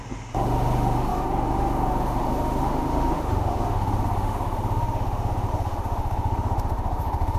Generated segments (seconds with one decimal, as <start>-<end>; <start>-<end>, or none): 0.0-7.4